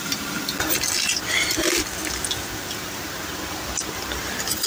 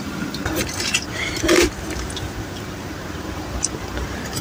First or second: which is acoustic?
first